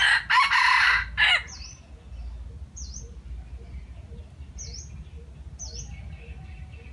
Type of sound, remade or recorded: recorded